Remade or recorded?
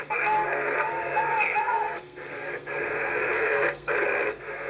remade